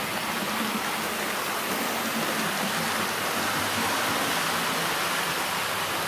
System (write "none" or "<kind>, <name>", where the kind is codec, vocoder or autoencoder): none